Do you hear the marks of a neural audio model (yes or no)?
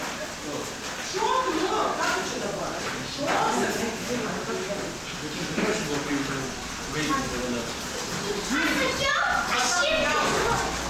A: no